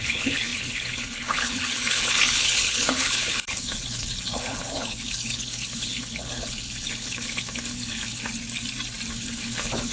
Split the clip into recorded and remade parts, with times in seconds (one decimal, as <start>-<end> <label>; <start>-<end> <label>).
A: 0.0-8.3 remade; 8.3-9.1 recorded; 9.1-9.9 remade